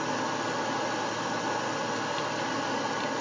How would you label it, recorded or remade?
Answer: recorded